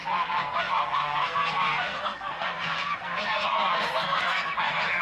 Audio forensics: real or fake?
fake